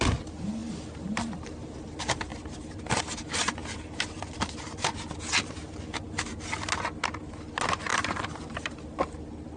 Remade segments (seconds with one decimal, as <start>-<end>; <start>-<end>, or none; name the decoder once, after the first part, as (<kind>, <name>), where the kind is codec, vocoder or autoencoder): 0.6-1.8 (vocoder, BigVGAN v2); 7.9-9.0

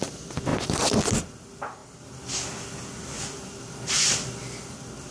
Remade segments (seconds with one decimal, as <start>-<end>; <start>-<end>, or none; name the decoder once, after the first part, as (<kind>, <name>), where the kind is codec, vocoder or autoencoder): none

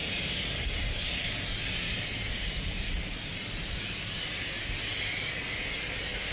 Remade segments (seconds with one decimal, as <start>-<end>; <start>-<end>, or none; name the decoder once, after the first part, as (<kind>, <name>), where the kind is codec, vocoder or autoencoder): none

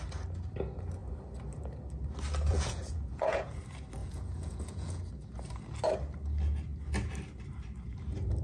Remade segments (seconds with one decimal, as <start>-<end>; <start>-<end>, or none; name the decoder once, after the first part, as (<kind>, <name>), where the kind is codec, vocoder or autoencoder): 2.5-3.6 (vocoder, Vocos); 4.0-5.1

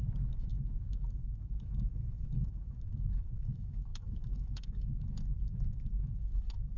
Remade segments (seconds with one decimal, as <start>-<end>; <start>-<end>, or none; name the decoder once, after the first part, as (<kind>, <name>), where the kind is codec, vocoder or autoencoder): 0.0-6.8 (autoencoder, DAC-VAE)

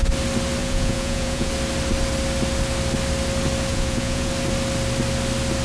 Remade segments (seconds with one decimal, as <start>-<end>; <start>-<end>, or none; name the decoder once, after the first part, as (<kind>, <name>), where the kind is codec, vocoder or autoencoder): 0.6-1.5 (vocoder, Vocos); 3.7-4.3

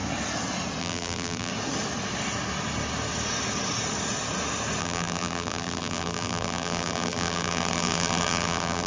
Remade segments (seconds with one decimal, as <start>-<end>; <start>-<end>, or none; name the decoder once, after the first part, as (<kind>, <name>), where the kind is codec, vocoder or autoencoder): 0.8-1.5 (vocoder, BigVGAN v2); 4.8-8.9

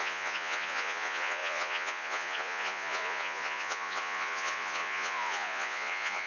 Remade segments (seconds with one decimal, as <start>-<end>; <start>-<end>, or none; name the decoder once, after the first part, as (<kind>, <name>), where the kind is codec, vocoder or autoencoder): 0.0-6.3 (vocoder, Vocos)